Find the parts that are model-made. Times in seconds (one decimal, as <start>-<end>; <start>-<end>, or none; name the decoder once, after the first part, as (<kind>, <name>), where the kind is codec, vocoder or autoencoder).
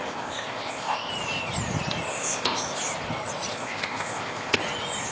0.0-1.1 (codec, ZipCodec); 2.1-2.8; 3.5-4.6